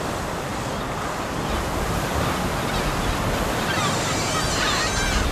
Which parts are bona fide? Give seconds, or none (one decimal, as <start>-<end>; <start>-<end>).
0.0-5.3